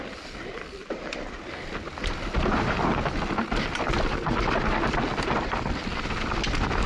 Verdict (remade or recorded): recorded